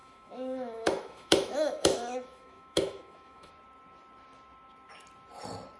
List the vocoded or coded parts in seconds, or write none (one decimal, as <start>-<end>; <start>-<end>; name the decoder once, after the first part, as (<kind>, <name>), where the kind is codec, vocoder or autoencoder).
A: 0.0-3.5 (autoencoder, DAC-VAE)